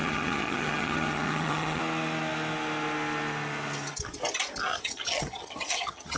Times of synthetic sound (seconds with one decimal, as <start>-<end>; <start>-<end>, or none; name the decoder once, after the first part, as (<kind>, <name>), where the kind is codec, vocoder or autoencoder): 0.0-1.8 (vocoder, HiFi-GAN); 4.7-6.2